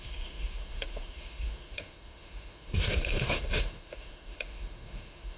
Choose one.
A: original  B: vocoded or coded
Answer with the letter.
B